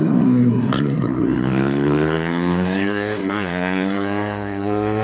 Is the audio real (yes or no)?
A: no